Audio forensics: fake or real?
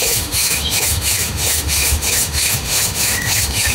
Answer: fake